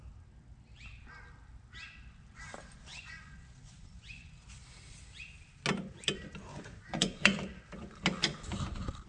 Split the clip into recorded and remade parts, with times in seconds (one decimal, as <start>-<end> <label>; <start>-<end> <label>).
0.0-2.9 recorded; 2.9-4.4 remade; 4.4-6.5 recorded; 6.5-7.4 remade; 7.4-9.1 recorded